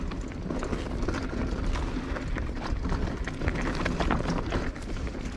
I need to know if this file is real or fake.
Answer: real